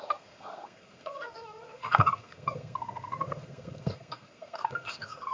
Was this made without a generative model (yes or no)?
no